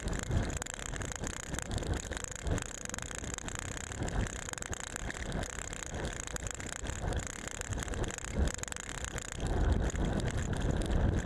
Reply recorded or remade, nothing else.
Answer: recorded